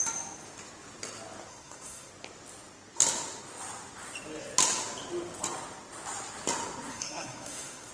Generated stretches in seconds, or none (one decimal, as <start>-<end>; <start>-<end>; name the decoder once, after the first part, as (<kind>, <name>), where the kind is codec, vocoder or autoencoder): 1.5-2.1 (codec, SNAC); 6.9-7.9